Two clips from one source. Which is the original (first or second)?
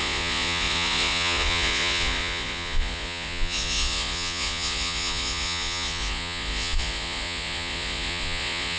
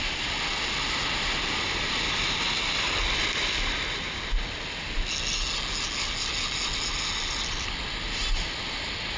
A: second